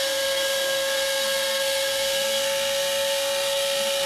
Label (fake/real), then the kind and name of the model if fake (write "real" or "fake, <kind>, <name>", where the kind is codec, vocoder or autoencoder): fake, codec, SNAC